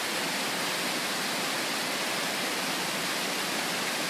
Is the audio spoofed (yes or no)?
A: no